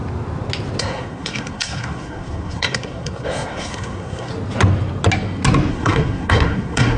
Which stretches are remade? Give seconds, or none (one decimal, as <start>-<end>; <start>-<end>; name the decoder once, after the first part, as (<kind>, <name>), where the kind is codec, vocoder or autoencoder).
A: 0.8-4.3 (codec, SNAC); 5.7-7.0